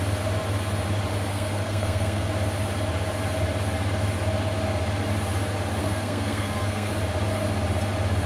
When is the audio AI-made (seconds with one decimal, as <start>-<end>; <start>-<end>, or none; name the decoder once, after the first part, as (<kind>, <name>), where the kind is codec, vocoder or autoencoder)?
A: 1.3-2.3 (codec, SNAC); 5.8-6.9